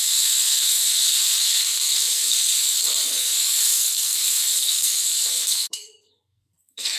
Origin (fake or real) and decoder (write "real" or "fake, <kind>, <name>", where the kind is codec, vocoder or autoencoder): fake, codec, SNAC